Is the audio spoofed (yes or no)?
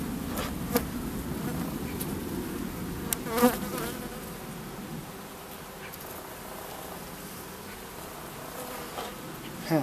no